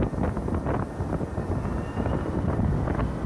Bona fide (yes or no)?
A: yes